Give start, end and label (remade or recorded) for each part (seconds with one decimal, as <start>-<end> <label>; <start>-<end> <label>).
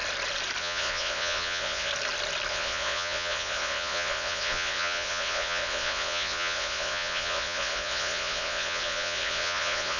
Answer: 0.0-0.6 recorded; 0.6-1.9 remade; 1.9-2.5 recorded; 2.5-10.0 remade